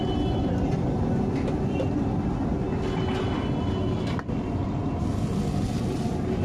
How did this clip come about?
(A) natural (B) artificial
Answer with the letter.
A